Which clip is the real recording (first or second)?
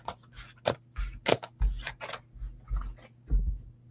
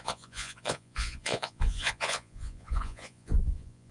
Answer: first